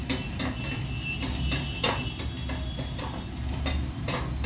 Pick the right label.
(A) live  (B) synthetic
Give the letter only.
A